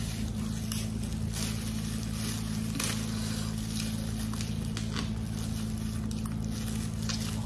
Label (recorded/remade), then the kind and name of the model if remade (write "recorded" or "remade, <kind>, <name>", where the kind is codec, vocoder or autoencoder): recorded